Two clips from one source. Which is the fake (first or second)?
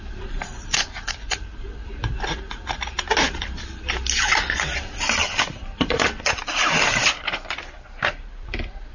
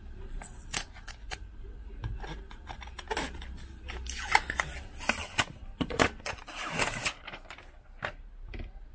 first